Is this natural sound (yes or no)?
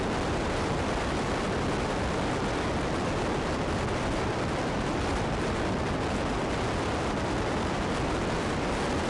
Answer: yes